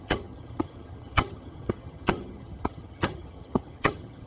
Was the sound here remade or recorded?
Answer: remade